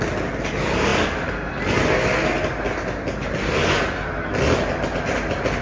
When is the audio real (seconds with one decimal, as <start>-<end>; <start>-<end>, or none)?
0.0-5.6